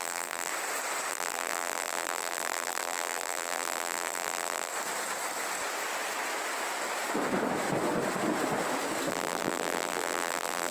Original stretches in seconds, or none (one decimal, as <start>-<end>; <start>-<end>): 0.5-1.1; 4.7-9.1